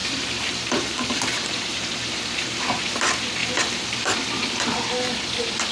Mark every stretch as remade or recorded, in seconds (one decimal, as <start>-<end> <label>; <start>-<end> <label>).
0.0-2.8 remade; 2.8-3.4 recorded; 3.4-4.1 remade; 4.1-5.7 recorded